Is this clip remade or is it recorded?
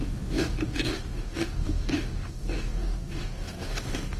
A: remade